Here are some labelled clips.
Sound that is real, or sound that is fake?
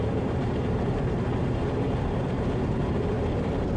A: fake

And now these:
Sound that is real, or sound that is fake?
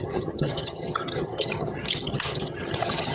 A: fake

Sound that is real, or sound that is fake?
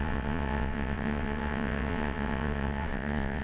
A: fake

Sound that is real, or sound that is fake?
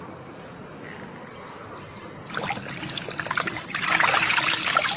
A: fake